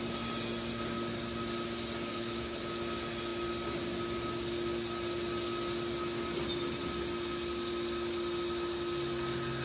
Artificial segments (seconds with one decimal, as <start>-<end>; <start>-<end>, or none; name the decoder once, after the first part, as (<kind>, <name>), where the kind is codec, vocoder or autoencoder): 2.1-2.6 (codec, HILCodec)

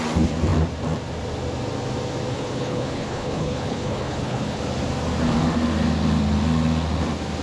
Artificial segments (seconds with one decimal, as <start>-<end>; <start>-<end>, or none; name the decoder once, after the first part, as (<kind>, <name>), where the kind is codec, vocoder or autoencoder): 2.3-4.6 (codec, HILCodec)

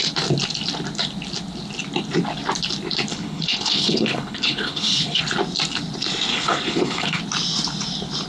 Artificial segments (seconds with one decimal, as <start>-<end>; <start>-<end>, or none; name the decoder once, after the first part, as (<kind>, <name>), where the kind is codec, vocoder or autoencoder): 3.1-5.2 (codec, HILCodec); 6.3-7.2

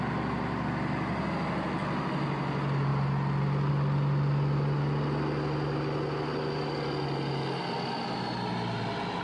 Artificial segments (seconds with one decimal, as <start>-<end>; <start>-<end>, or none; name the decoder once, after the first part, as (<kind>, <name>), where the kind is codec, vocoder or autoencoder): none

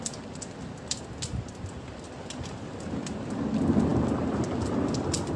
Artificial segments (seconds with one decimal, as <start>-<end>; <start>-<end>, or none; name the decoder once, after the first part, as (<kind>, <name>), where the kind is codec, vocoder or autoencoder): none